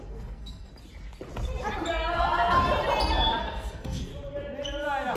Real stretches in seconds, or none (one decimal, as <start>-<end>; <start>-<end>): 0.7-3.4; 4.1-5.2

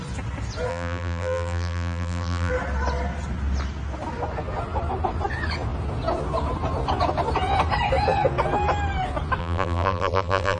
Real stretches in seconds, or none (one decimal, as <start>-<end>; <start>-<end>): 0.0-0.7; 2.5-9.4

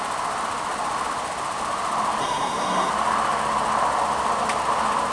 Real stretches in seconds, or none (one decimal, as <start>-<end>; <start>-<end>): 0.0-2.2; 2.9-5.1

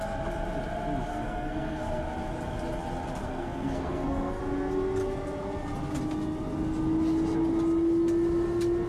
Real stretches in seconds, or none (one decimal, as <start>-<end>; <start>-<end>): 0.0-1.1; 2.0-3.2; 4.4-8.9

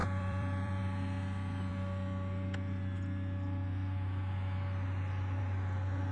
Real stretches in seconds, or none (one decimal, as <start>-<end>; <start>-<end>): 0.8-6.1